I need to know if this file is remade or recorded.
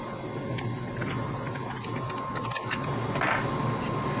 recorded